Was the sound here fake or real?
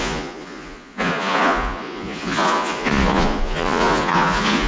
fake